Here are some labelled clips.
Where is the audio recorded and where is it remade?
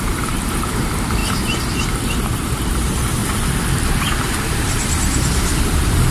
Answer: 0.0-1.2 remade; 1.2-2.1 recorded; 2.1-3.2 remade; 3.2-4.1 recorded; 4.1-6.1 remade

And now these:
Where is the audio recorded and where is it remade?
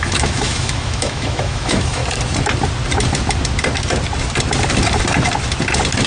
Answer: 0.0-2.0 remade; 2.0-6.1 recorded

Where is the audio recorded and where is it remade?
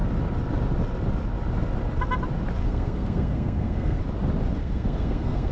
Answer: 0.0-2.6 recorded; 2.6-4.0 remade; 4.0-4.6 recorded; 4.6-5.5 remade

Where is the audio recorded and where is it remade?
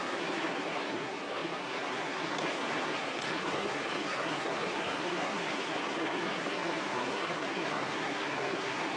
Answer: 0.0-9.0 remade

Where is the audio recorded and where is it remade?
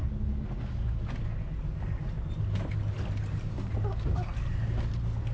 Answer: 0.0-5.3 recorded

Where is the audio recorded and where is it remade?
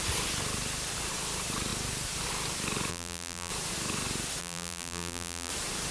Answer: 0.0-2.9 recorded; 2.9-3.5 remade; 3.5-4.4 recorded; 4.4-5.5 remade; 5.5-5.9 recorded